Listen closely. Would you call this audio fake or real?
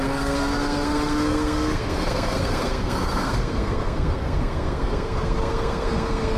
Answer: fake